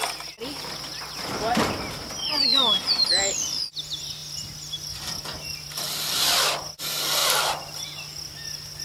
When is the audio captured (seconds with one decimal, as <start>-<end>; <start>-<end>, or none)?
0.0-2.5; 3.1-4.2; 6.8-7.2; 8.3-8.8